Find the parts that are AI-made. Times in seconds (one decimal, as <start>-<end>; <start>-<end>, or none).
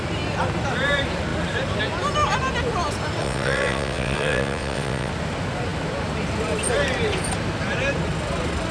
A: 3.2-5.1